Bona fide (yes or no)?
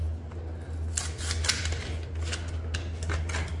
yes